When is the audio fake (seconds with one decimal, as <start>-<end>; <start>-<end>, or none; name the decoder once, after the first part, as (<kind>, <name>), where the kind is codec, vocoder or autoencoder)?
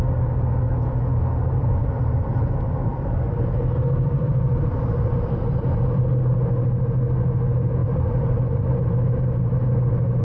1.8-2.3 (vocoder, BigVGAN v2); 2.9-6.0; 7.8-8.8